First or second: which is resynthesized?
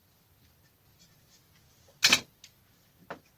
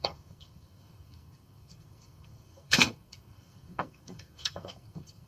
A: second